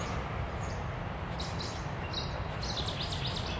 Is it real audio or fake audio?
real